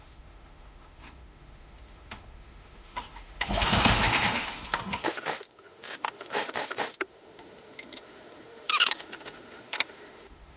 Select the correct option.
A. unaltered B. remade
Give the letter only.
B